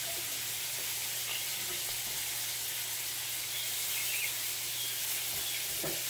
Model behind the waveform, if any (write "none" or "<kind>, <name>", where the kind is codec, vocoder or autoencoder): none